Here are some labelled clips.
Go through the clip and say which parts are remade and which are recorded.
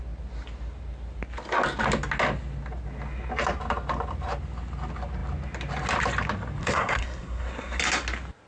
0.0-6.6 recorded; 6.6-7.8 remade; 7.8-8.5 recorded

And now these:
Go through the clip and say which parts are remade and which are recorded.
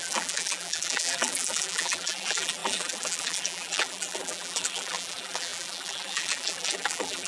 0.0-7.3 remade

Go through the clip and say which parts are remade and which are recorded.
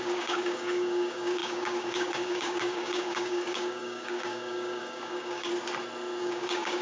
0.0-5.5 remade; 5.5-6.2 recorded; 6.2-6.8 remade